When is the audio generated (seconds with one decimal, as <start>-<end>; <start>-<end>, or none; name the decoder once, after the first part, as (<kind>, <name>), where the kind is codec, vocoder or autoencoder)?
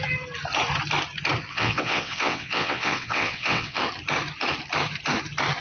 1.5-3.8 (vocoder, WaveNeXt)